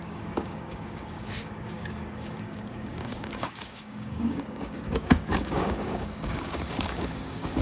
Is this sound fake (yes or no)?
yes